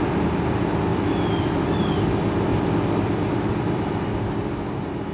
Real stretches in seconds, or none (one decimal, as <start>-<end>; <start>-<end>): 0.0-0.9; 1.8-2.5; 3.9-5.1